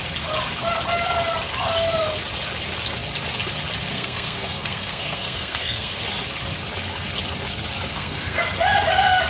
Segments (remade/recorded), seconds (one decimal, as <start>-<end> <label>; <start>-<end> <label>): 0.0-3.9 recorded; 3.9-6.0 remade; 6.0-7.9 recorded; 7.9-8.4 remade; 8.4-9.3 recorded